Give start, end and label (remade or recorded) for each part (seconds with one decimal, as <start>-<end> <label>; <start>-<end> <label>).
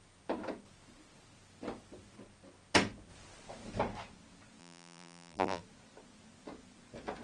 0.0-4.6 recorded; 4.6-5.6 remade; 5.6-7.2 recorded